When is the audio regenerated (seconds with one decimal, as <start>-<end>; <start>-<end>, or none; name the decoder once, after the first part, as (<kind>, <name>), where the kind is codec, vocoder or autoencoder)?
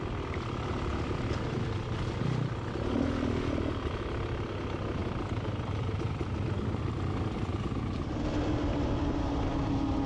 none